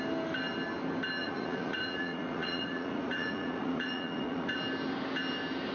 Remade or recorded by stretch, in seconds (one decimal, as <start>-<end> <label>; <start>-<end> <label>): 0.0-1.2 recorded; 1.2-4.6 remade; 4.6-5.7 recorded